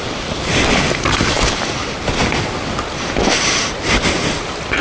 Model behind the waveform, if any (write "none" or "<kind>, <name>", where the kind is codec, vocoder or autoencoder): none